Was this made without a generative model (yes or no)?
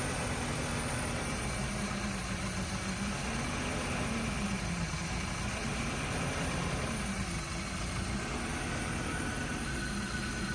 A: yes